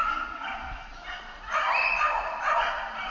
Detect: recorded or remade recorded